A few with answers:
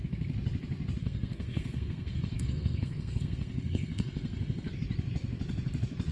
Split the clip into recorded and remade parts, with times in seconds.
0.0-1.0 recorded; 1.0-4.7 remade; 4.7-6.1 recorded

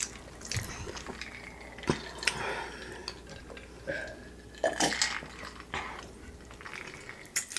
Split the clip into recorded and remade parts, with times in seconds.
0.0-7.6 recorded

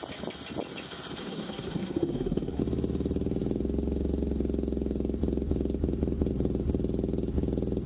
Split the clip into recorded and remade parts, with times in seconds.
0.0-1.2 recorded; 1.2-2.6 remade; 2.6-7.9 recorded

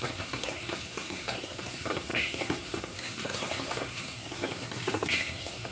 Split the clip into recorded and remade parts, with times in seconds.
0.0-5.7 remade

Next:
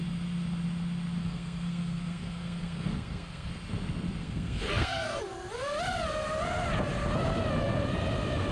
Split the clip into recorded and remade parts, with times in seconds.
0.0-1.2 recorded; 1.2-3.5 remade; 3.5-4.2 recorded; 4.2-5.2 remade; 5.2-8.5 recorded

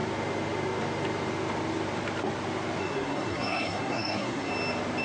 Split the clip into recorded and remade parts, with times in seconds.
0.0-2.8 recorded; 2.8-4.5 remade; 4.5-5.0 recorded

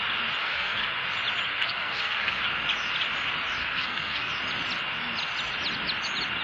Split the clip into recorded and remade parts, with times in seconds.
0.0-0.4 recorded; 0.4-0.9 remade; 0.9-1.5 recorded; 1.5-2.4 remade; 2.4-3.6 recorded; 3.6-4.3 remade; 4.3-6.4 recorded

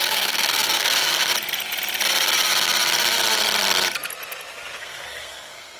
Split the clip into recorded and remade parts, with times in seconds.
0.0-1.3 remade; 1.3-4.8 recorded; 4.8-5.8 remade